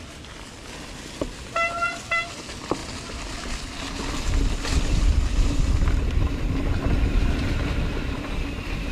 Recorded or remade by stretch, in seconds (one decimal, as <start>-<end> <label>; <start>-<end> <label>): 0.0-8.9 recorded